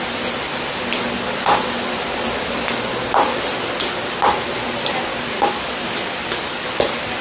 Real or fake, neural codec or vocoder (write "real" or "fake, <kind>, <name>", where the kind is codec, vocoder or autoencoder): real